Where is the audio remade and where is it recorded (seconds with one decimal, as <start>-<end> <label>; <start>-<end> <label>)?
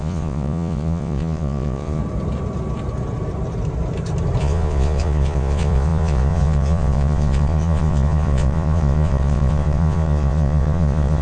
0.0-2.0 remade; 2.0-4.4 recorded; 4.4-11.2 remade